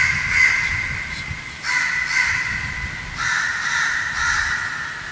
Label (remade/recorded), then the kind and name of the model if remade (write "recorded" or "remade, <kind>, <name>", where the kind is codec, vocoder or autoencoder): recorded